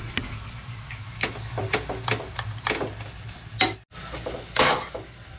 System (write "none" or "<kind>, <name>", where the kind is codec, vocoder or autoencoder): none